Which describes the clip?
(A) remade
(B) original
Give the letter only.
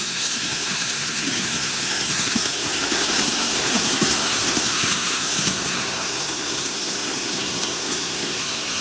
A